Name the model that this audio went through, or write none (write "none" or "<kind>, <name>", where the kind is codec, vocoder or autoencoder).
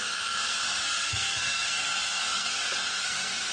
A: codec, SNAC